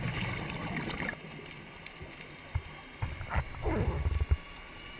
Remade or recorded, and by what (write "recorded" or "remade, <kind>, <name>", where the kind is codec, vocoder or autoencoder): recorded